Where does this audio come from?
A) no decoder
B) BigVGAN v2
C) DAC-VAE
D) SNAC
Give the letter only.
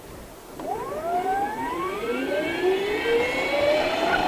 B